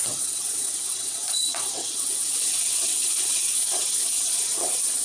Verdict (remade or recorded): remade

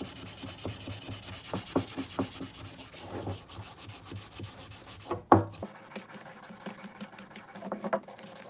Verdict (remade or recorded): recorded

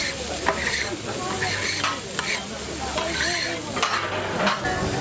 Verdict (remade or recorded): recorded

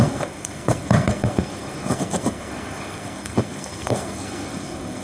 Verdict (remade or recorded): remade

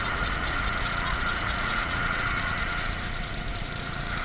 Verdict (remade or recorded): remade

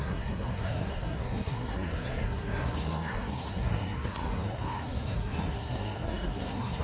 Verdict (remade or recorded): remade